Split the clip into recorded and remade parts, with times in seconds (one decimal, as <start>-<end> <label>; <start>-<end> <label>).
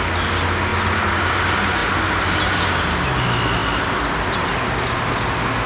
0.0-5.7 recorded